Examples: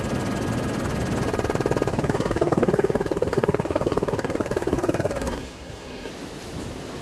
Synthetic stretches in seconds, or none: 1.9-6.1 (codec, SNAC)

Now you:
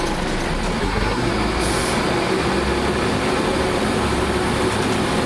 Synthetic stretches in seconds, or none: 0.8-1.3 (codec, SNAC)

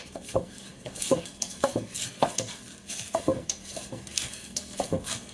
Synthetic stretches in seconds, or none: 0.0-5.3 (codec, SNAC)

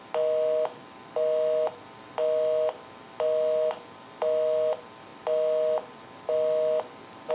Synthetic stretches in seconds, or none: none

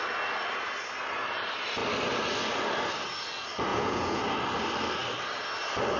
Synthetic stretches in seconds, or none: 3.7-4.2 (vocoder, Vocos)

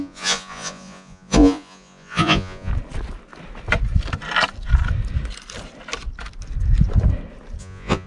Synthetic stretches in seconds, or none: 0.0-2.7 (vocoder, Vocos); 7.6-8.1